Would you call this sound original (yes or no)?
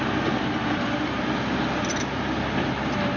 yes